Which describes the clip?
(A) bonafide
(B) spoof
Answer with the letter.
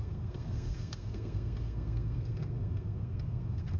B